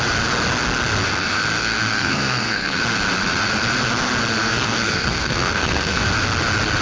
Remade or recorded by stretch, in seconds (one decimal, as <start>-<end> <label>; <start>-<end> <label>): 0.0-1.6 recorded; 1.6-2.8 remade; 2.8-4.5 recorded; 4.5-6.0 remade; 6.0-6.8 recorded